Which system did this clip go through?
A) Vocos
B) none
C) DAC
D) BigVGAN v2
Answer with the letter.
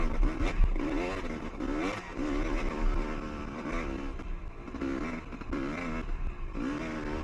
B